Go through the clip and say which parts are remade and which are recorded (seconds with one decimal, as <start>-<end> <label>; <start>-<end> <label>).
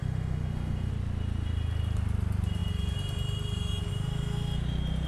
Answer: 0.0-0.9 remade; 0.9-5.1 recorded